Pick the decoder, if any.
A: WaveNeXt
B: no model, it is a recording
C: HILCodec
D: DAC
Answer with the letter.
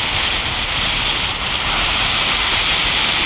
B